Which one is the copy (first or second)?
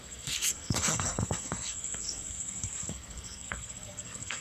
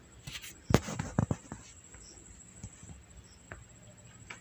first